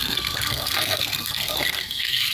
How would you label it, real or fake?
fake